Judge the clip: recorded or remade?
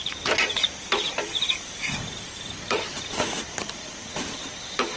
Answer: remade